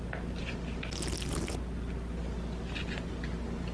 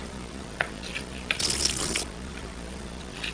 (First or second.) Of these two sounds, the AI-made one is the second